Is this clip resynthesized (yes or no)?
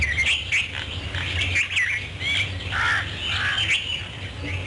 no